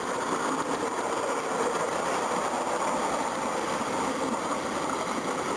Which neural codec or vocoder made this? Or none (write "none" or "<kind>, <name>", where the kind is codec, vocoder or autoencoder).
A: none